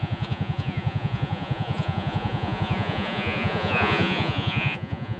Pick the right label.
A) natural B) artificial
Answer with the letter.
B